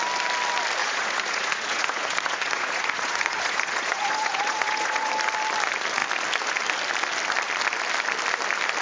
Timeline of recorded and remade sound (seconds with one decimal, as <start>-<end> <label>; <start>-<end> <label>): 0.0-0.8 recorded; 0.8-5.1 remade; 5.1-8.8 recorded

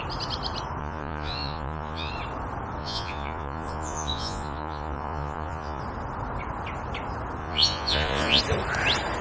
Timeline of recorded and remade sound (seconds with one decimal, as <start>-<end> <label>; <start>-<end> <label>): 0.0-0.8 recorded; 0.8-2.1 remade; 2.1-2.8 recorded; 2.8-5.8 remade; 5.8-7.4 recorded; 7.4-8.4 remade; 8.4-9.2 recorded

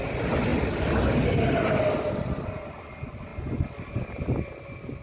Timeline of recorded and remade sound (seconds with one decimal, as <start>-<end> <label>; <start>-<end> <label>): 0.0-5.0 recorded

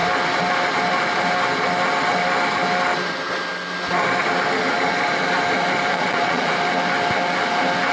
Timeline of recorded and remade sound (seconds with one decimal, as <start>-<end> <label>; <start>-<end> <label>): 0.0-5.9 recorded; 5.9-6.5 remade; 6.5-7.9 recorded

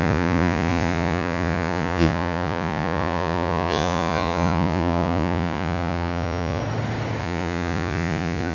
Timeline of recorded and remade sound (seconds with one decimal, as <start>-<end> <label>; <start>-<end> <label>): 0.0-6.6 remade; 6.6-7.2 recorded; 7.2-8.5 remade